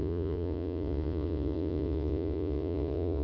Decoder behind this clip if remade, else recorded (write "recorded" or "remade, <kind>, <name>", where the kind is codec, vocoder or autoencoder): remade, vocoder, Vocos